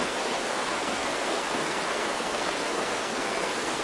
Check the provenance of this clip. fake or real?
fake